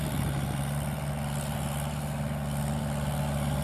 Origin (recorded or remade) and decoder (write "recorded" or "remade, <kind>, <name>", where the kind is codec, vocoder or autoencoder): recorded